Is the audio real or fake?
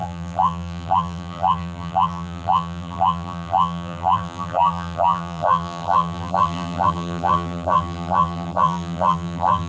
fake